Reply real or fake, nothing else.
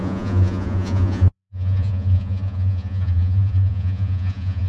fake